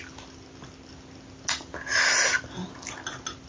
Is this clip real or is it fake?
real